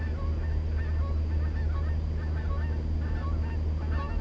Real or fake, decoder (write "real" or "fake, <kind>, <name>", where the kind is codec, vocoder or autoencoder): real